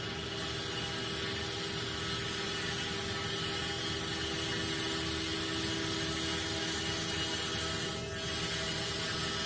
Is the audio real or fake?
real